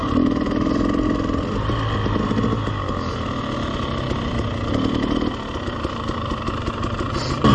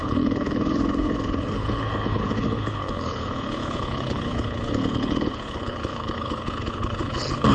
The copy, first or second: second